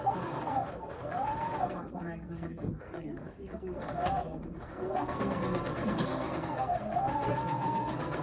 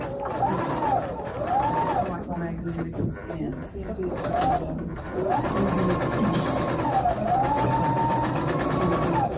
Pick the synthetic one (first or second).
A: first